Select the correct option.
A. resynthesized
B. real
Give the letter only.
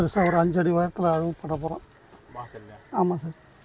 B